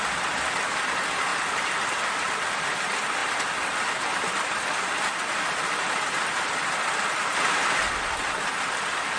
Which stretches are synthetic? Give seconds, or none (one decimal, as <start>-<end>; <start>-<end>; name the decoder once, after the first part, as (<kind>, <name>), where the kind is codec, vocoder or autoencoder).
1.3-2.6 (vocoder, BigVGAN v2); 3.2-7.4